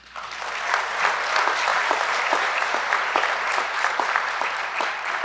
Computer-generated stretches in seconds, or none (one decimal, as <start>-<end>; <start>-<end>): 1.7-4.8